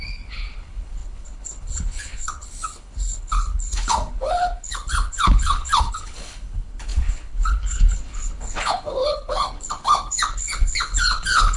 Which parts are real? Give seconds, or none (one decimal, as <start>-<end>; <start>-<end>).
none